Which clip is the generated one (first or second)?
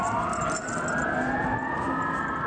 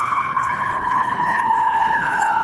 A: second